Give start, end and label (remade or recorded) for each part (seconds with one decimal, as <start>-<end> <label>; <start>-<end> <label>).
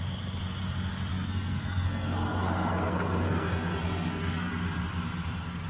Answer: 0.0-1.1 recorded; 1.1-4.5 remade; 4.5-5.7 recorded